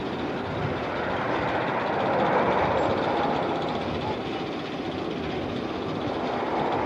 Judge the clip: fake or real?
real